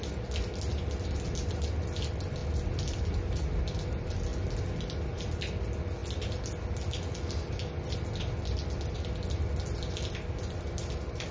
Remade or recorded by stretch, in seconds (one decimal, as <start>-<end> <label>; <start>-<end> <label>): 0.0-11.3 recorded